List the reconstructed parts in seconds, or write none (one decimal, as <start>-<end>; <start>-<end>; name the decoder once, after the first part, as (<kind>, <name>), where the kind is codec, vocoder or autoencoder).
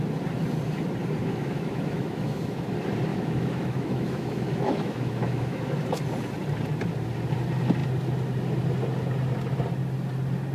1.2-2.7 (autoencoder, DAC-VAE); 3.1-6.0